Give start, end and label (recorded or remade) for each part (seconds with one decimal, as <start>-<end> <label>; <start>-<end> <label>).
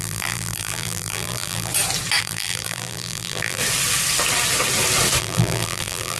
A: 0.0-1.7 remade; 1.7-2.2 recorded; 2.2-3.6 remade; 3.6-5.2 recorded; 5.2-6.2 remade